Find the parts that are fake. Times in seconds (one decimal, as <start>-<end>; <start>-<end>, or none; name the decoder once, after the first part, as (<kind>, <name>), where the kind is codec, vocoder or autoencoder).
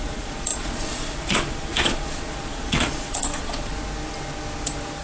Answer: 0.0-3.7 (vocoder, Vocos)